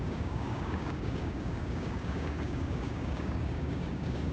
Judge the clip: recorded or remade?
remade